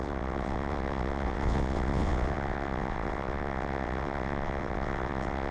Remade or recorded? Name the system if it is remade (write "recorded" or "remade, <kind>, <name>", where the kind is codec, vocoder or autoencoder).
remade, vocoder, WaveNeXt